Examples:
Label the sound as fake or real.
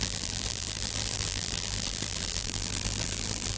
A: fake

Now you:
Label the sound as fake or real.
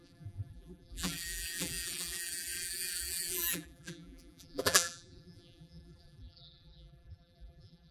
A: fake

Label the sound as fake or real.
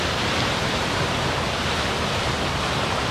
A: real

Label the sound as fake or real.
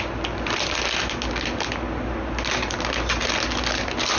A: real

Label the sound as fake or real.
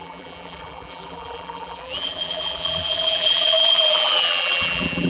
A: fake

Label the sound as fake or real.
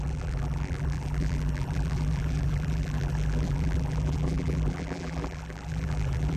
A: fake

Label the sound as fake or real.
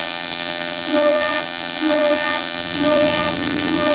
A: fake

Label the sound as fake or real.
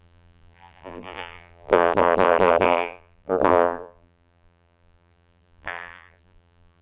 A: fake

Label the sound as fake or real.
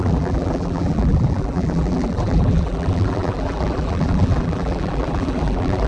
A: fake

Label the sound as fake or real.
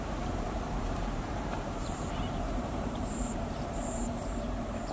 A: fake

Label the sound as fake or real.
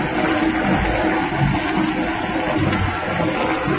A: real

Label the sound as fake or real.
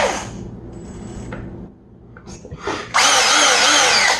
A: real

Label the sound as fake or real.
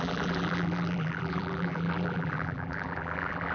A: fake